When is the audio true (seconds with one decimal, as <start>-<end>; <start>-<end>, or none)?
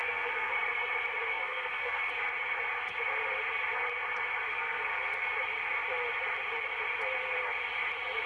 0.5-1.3; 2.1-4.5; 5.3-8.3